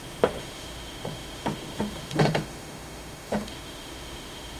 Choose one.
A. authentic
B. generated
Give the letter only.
B